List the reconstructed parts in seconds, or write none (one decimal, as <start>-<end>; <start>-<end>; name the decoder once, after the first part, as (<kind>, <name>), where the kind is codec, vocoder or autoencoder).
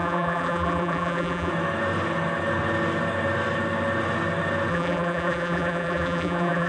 0.0-1.5 (vocoder, BigVGAN v2); 4.7-6.7